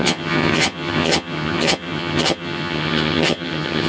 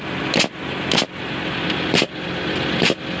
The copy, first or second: first